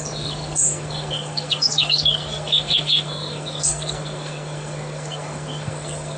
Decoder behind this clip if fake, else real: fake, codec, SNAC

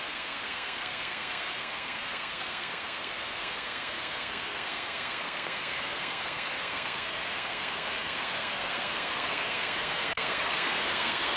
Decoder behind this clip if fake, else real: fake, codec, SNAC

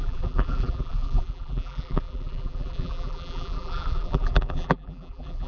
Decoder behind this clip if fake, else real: fake, vocoder, BigVGAN v2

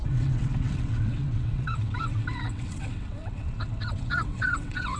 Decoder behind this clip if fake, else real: fake, vocoder, WaveNeXt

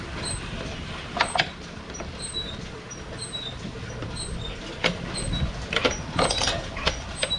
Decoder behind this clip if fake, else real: fake, vocoder, BigVGAN v2